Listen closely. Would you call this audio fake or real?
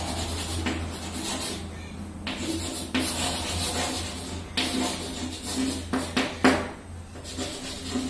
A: real